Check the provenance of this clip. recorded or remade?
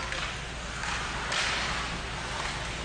recorded